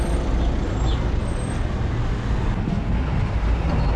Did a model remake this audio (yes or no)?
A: no